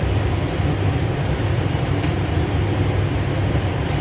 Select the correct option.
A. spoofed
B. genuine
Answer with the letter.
A